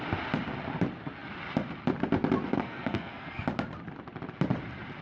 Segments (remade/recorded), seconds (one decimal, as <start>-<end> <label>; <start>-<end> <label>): 0.0-2.5 recorded; 2.5-3.4 remade; 3.4-5.0 recorded